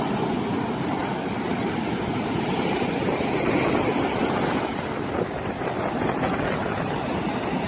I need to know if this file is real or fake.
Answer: real